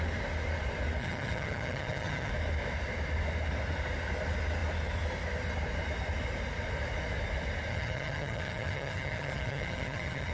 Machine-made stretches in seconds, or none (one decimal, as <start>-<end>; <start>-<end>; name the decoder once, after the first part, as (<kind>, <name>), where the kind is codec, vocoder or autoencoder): 1.0-2.3 (vocoder, HiFi-GAN); 7.7-10.3